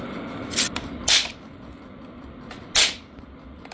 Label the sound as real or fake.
real